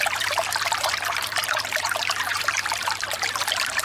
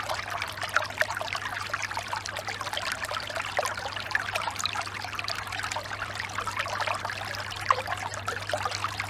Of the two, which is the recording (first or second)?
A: second